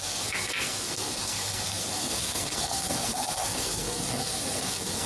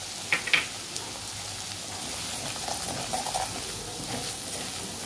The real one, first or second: second